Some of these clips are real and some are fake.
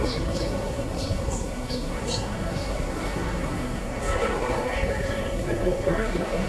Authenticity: fake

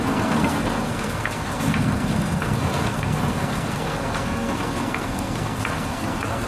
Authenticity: fake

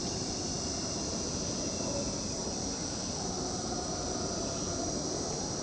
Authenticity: real